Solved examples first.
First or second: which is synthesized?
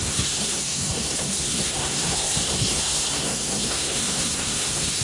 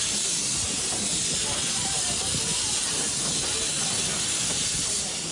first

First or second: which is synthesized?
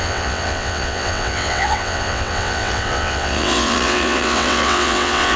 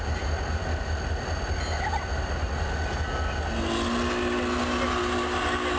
first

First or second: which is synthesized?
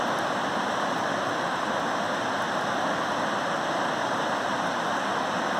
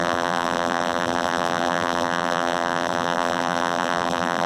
second